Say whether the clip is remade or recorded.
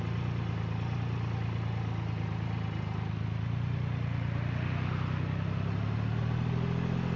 recorded